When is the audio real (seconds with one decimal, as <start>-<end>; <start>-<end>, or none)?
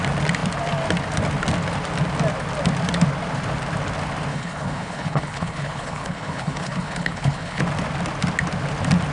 0.0-4.3; 7.6-9.1